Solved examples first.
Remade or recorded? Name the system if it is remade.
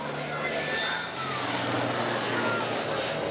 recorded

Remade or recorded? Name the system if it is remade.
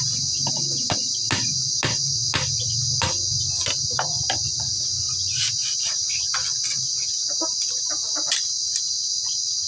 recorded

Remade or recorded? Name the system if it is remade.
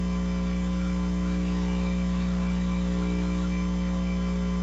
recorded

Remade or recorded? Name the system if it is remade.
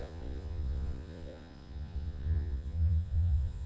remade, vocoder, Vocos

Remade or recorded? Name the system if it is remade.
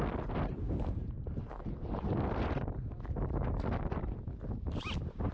recorded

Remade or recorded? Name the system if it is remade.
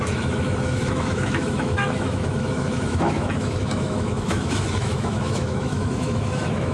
remade, autoencoder, DAC-VAE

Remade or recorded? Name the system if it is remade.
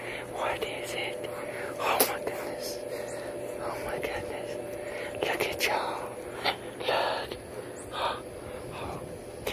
recorded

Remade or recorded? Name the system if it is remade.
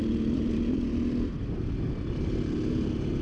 recorded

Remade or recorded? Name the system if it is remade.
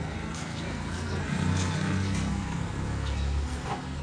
remade, codec, SNAC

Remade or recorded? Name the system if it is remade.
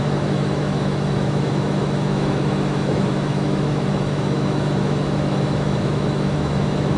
remade, autoencoder, DAC-VAE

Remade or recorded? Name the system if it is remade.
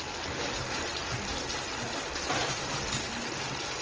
recorded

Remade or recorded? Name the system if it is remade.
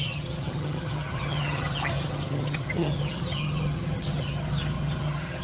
remade, vocoder, HiFi-GAN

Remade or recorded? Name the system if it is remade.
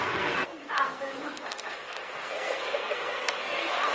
remade, codec, SNAC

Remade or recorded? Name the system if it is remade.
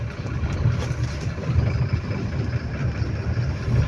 recorded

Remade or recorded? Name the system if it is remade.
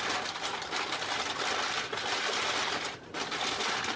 recorded